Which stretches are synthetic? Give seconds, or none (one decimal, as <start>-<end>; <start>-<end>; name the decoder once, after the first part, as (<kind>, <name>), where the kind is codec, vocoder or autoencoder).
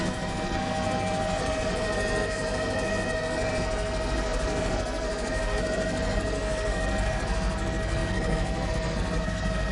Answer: 0.0-9.7 (codec, SNAC)